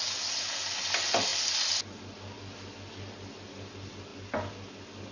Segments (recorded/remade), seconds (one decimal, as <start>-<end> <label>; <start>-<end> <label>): 0.0-5.1 recorded